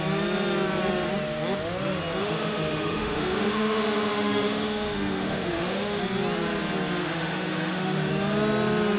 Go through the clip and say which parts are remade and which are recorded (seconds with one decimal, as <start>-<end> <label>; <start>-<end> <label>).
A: 0.0-2.2 recorded; 2.2-6.0 remade; 6.0-7.0 recorded; 7.0-8.1 remade; 8.1-9.0 recorded